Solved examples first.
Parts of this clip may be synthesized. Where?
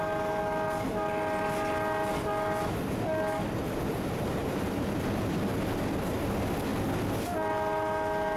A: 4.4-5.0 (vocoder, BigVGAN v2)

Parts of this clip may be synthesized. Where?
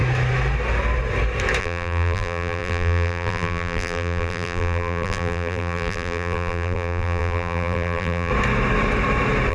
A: 1.6-8.3 (vocoder, BigVGAN v2)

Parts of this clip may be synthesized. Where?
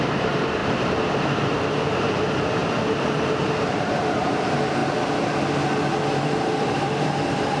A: 0.0-4.8 (vocoder, BigVGAN v2); 6.2-7.6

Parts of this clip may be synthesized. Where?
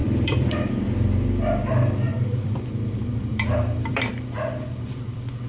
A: 0.0-0.7 (vocoder, BigVGAN v2); 2.1-5.5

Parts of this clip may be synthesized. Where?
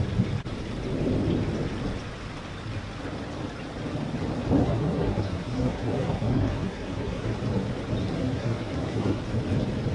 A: 4.6-7.3 (codec, SNAC); 8.0-9.2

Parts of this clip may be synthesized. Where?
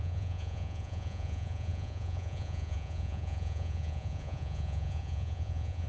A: 0.0-5.9 (vocoder, Vocos)